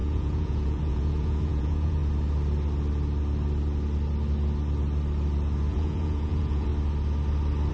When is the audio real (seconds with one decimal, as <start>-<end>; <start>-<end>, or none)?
2.0-5.7; 6.7-7.7